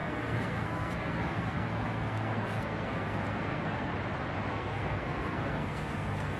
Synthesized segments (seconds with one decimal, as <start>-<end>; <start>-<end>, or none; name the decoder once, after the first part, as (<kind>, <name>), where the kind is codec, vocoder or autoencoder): 0.0-3.9 (codec, SNAC); 4.5-6.4